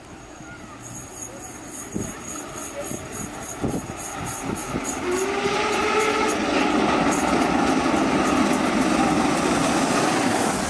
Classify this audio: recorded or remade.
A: recorded